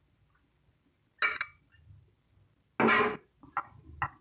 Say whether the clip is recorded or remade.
recorded